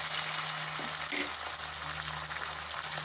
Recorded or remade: recorded